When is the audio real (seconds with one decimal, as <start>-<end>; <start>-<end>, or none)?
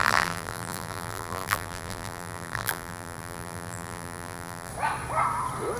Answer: 4.7-5.8